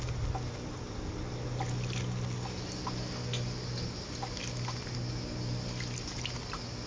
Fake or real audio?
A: real